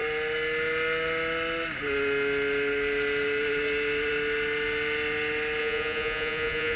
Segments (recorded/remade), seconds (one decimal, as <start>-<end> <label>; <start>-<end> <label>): 0.0-5.6 recorded; 5.6-6.8 remade